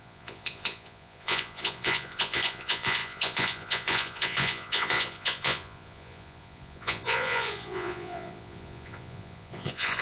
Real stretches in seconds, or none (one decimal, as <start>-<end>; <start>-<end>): none